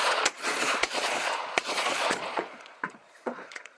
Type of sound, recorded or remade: remade